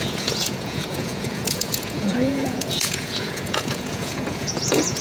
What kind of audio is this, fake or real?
fake